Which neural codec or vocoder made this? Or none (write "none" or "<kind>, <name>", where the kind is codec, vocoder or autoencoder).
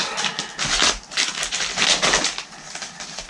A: none